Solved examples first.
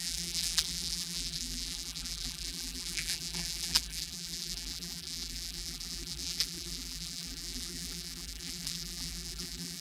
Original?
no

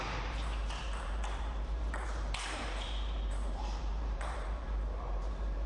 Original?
no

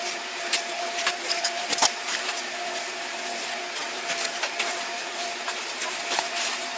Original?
no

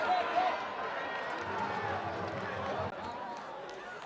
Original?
yes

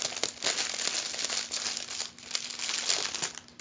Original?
yes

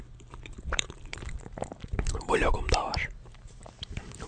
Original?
no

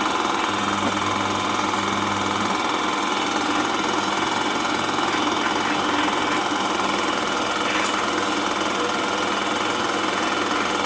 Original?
yes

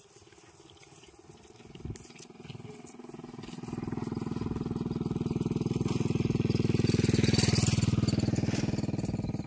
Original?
yes